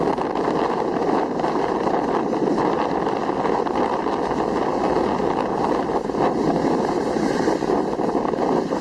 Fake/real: fake